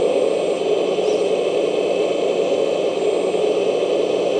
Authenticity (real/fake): real